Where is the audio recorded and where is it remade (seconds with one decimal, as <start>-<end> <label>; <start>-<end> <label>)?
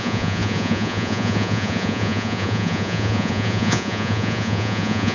0.0-5.1 remade